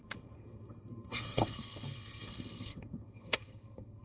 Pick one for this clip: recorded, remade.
remade